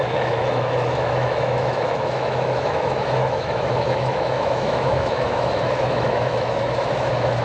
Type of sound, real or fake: fake